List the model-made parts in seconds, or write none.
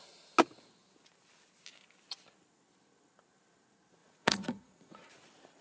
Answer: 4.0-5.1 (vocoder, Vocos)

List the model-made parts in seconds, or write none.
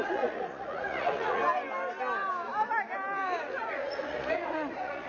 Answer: 0.0-1.4 (vocoder, Vocos); 3.4-5.1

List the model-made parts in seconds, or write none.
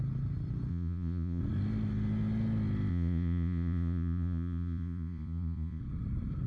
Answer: 0.7-1.4 (vocoder, Vocos); 2.9-5.8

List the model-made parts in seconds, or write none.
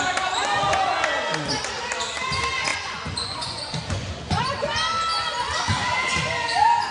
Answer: 2.7-4.5 (vocoder, Vocos)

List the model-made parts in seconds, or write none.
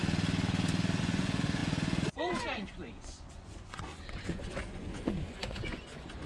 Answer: 1.0-6.3 (vocoder, Vocos)